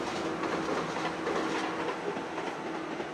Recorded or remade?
recorded